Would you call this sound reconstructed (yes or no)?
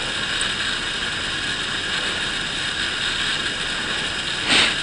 no